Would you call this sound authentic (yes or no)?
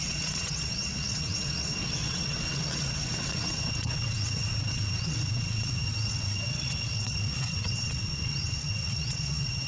no